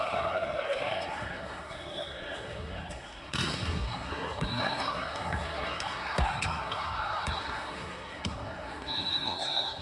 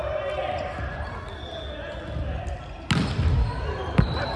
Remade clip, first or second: first